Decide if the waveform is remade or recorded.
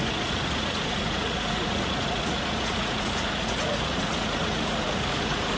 remade